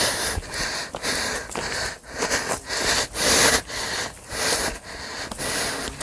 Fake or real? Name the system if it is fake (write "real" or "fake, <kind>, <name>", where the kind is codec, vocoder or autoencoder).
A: real